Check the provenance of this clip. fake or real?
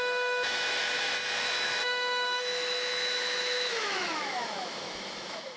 fake